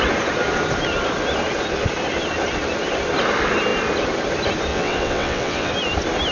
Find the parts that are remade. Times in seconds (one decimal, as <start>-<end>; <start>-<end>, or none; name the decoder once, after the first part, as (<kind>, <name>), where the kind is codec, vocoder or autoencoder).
4.7-5.7 (vocoder, WaveNeXt)